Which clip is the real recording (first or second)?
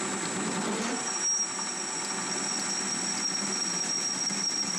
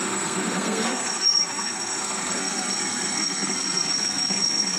first